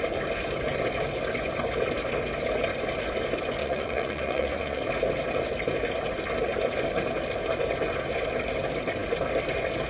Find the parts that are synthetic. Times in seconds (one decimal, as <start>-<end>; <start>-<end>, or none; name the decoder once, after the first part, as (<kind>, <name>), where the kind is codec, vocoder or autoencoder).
3.6-4.8 (vocoder, Vocos)